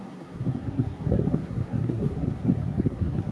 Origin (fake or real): fake